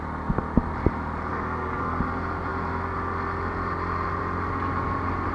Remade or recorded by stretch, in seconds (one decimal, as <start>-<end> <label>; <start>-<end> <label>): 0.0-1.3 recorded; 1.3-2.0 remade; 2.0-5.3 recorded